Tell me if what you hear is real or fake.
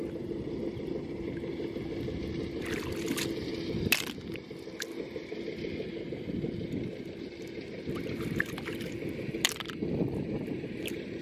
real